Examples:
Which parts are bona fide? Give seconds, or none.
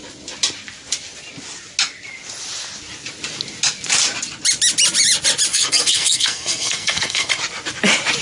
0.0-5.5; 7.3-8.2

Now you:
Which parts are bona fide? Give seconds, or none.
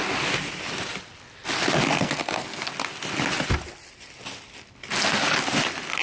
0.0-1.9; 2.7-6.0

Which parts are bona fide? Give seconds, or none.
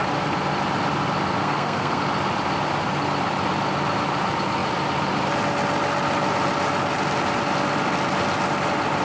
0.0-1.4; 2.0-9.0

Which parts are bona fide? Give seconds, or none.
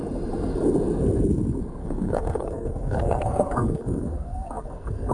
0.0-1.8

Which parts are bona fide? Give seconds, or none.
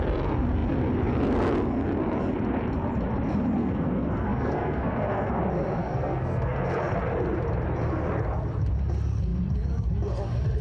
0.0-3.6; 5.3-5.8; 6.8-10.6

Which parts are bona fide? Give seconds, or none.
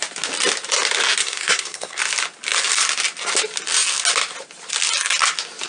0.0-1.2; 2.0-5.7